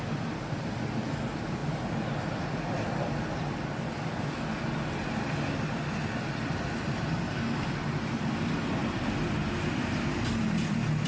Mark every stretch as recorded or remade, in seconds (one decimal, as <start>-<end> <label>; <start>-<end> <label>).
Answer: 0.0-11.1 recorded